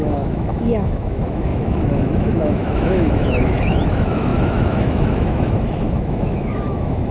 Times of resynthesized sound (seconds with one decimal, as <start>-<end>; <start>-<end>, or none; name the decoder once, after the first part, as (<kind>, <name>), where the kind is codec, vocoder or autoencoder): 0.0-7.1 (autoencoder, DAC-VAE)